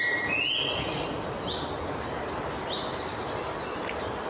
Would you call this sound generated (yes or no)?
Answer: no